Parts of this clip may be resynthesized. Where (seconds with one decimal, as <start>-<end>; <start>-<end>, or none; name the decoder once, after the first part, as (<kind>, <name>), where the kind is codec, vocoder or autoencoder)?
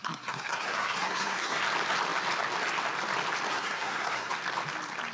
0.0-1.6 (codec, SNAC); 3.5-4.3